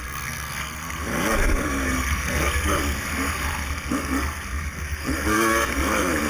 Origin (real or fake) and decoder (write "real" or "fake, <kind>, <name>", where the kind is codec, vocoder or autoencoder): fake, codec, SNAC